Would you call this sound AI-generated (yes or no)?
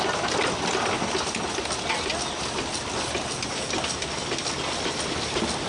no